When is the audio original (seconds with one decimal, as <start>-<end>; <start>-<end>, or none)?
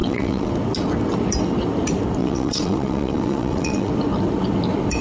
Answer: 0.5-2.2; 3.9-5.0